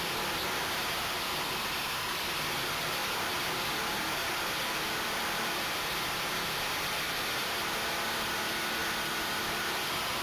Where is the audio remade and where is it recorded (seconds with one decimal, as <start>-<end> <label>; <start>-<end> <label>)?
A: 0.0-7.4 remade; 7.4-7.9 recorded; 7.9-10.2 remade